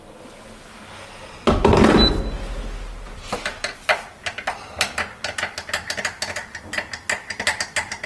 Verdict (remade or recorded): recorded